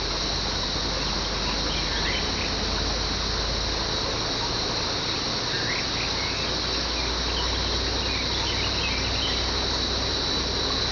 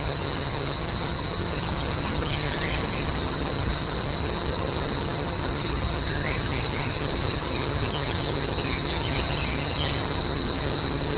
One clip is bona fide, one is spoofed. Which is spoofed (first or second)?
second